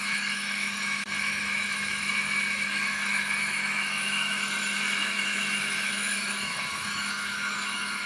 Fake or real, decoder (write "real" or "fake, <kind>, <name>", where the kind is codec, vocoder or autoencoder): fake, autoencoder, DAC-VAE